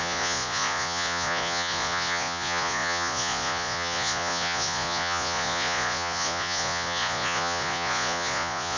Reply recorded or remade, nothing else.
remade